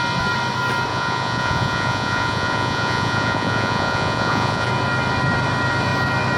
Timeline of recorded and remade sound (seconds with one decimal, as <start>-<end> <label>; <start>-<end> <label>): 0.0-0.9 recorded; 0.9-4.7 remade; 4.7-6.4 recorded